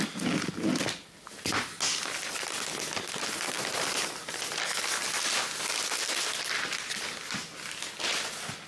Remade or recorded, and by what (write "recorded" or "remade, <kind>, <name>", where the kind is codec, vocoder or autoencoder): recorded